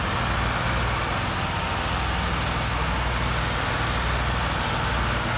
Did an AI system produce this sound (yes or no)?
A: no